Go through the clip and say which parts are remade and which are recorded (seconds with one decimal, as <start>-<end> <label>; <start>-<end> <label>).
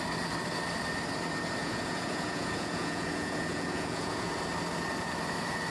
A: 0.0-1.6 recorded; 1.6-4.3 remade; 4.3-5.7 recorded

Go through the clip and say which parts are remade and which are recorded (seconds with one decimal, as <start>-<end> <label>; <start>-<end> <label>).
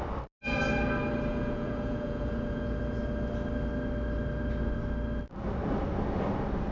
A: 0.0-1.3 recorded; 1.3-2.8 remade; 2.8-6.7 recorded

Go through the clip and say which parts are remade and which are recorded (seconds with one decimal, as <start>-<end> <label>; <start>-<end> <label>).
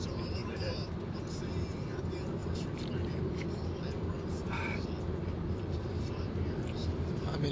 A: 0.0-7.5 recorded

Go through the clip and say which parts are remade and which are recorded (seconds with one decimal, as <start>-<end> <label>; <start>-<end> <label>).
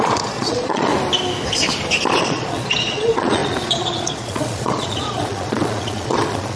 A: 0.0-0.9 remade; 0.9-2.2 recorded; 2.2-6.6 remade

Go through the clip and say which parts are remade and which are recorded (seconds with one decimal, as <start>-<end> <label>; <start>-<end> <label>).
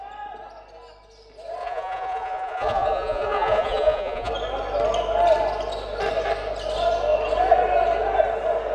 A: 0.0-1.6 recorded; 1.6-4.3 remade; 4.3-8.7 recorded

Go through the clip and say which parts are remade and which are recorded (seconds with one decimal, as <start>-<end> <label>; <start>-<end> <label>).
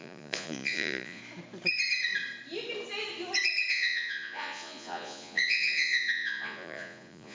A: 0.0-1.2 remade; 1.2-3.7 recorded; 3.7-7.3 remade